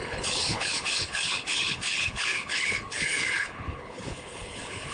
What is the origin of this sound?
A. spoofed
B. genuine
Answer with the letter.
A